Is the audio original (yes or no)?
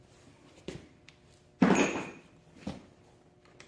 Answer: no